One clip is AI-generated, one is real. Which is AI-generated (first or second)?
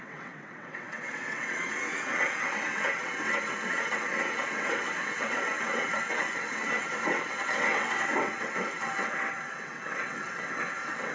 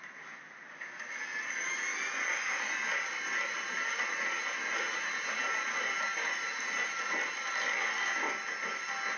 first